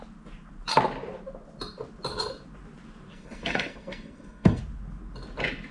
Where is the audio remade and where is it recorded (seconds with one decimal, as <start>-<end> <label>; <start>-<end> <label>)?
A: 0.0-3.1 recorded; 3.1-4.6 remade; 4.6-5.7 recorded